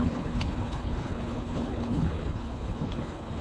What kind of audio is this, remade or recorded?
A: remade